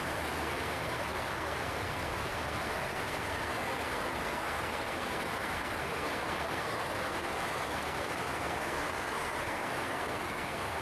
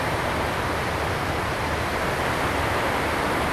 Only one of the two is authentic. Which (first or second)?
second